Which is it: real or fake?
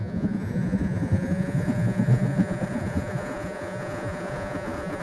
fake